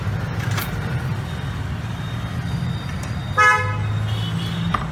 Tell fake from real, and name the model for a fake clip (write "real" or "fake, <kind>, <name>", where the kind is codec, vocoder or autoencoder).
real